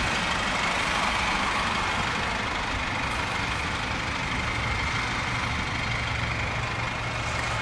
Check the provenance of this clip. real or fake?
real